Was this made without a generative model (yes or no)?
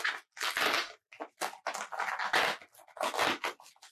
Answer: yes